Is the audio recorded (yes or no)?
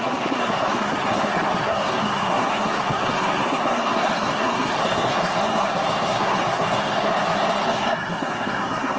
no